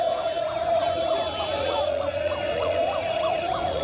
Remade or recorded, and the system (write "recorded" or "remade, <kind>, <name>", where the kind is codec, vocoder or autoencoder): remade, vocoder, Vocos